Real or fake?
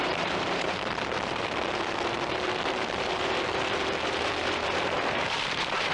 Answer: fake